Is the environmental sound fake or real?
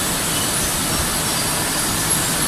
real